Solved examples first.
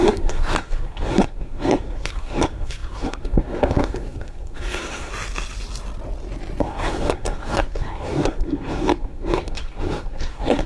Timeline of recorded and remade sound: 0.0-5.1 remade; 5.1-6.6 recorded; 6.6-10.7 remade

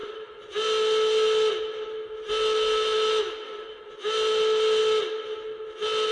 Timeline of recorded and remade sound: 0.0-6.1 recorded

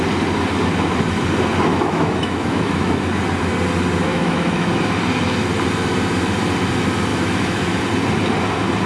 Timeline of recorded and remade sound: 0.0-1.7 recorded; 1.7-3.0 remade; 3.0-4.1 recorded; 4.1-4.7 remade; 4.7-7.1 recorded; 7.1-7.8 remade; 7.8-8.9 recorded

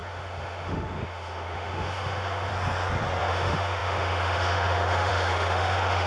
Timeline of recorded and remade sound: 0.0-2.5 remade; 2.5-3.2 recorded; 3.2-6.1 remade

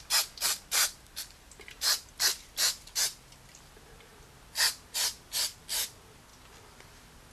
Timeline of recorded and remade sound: 0.0-7.3 recorded